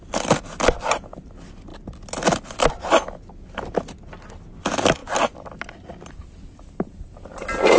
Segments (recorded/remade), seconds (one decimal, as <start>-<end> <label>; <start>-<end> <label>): 0.0-7.8 recorded